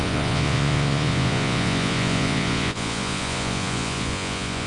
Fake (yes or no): yes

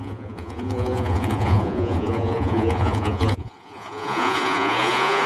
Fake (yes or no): yes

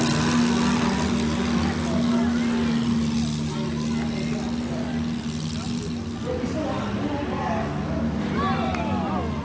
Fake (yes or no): no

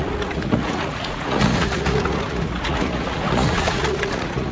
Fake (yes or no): yes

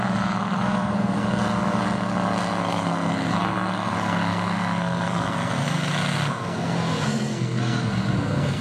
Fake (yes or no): yes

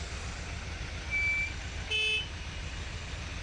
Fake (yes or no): no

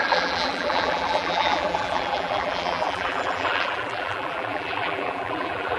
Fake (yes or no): yes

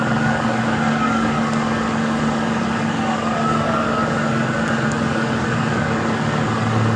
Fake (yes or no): yes